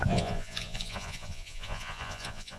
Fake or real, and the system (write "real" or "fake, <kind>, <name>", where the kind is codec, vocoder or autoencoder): fake, vocoder, Vocos